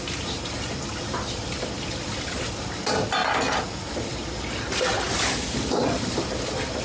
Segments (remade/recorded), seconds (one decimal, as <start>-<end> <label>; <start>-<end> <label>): 0.0-6.8 recorded